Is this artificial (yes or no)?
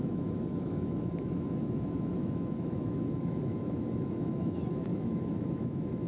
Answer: yes